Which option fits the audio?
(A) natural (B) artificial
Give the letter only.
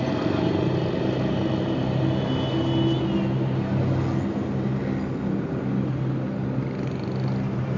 A